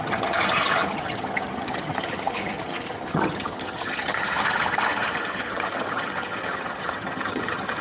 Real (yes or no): no